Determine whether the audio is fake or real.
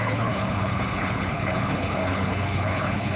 fake